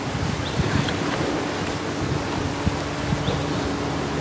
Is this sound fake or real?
real